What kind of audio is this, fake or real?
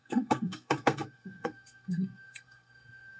fake